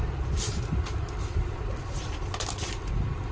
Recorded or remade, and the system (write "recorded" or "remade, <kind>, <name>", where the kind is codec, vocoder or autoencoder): recorded